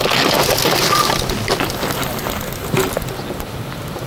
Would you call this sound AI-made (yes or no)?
no